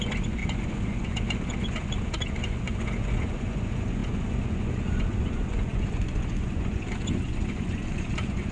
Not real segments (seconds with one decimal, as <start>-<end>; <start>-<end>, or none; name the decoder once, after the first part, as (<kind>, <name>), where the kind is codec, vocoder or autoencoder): 0.0-8.5 (vocoder, Vocos)